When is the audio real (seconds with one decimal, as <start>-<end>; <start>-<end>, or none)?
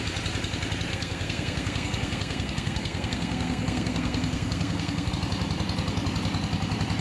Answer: 0.0-0.9; 5.1-7.0